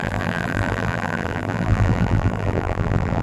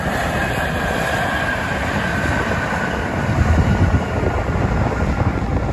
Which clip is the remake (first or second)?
first